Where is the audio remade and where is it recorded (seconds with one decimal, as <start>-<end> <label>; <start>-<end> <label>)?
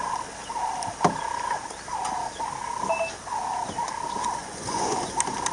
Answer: 0.0-4.4 recorded; 4.4-5.1 remade; 5.1-5.5 recorded